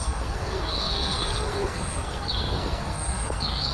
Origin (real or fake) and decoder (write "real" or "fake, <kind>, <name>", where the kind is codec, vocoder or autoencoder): fake, codec, SNAC